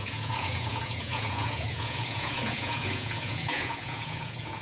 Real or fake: fake